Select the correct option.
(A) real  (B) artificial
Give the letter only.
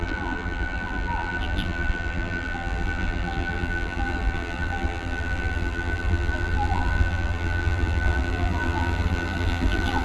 B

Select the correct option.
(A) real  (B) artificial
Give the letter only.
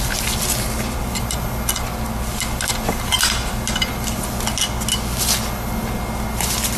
A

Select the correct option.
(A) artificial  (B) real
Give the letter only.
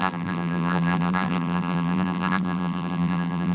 A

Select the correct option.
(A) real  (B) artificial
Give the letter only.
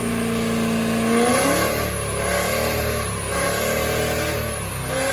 A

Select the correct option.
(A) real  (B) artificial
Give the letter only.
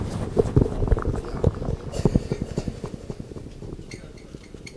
A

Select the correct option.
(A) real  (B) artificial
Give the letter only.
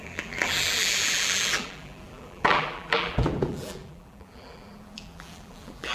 B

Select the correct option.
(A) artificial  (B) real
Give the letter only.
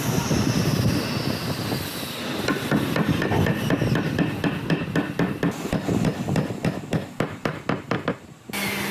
B